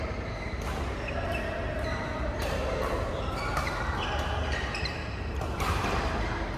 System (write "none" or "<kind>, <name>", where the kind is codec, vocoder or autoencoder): vocoder, BigVGAN v2